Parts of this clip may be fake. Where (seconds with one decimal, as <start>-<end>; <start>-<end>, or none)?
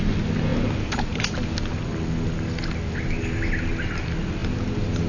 none